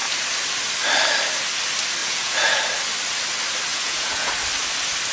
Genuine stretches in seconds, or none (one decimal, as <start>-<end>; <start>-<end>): 0.0-2.0; 2.6-3.7; 4.3-5.1